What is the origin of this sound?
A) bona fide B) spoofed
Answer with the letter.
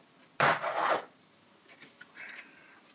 A